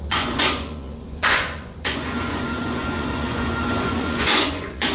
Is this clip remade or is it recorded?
remade